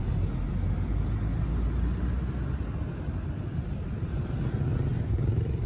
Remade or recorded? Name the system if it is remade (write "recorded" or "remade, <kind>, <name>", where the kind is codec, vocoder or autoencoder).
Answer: recorded